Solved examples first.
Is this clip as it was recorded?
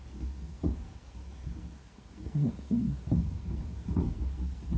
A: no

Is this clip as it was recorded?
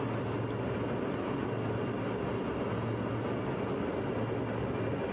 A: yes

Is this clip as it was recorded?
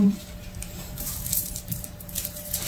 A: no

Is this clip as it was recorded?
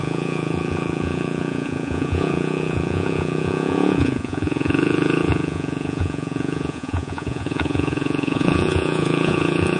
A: no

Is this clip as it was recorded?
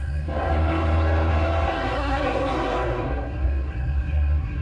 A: no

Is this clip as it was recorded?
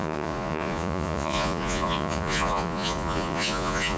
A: no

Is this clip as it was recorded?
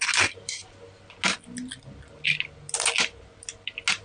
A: yes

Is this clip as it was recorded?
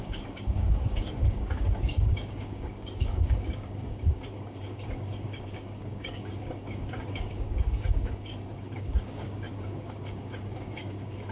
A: no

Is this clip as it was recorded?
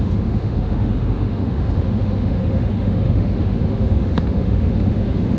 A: no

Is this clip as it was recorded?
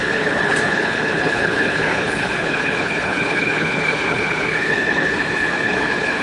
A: no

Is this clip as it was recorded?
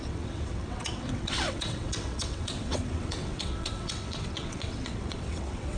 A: no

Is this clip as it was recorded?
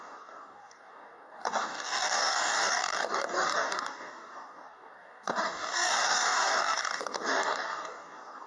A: no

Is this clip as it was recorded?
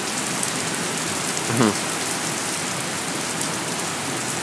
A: yes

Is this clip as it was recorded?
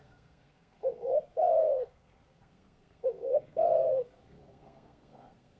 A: no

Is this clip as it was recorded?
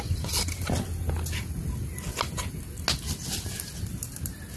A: yes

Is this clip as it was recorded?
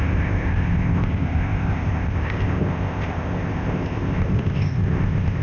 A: no